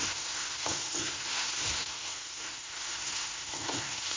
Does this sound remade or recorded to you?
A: remade